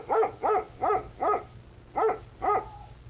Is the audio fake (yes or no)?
no